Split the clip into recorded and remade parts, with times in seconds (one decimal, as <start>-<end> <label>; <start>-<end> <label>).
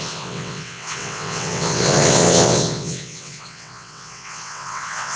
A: 0.0-5.2 remade